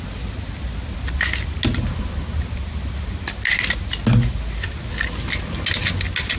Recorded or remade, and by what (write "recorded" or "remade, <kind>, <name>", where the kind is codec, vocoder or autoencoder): recorded